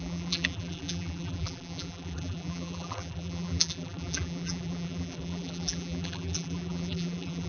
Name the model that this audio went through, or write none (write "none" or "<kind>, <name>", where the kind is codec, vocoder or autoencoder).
vocoder, BigVGAN v2